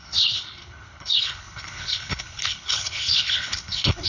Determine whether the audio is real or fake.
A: fake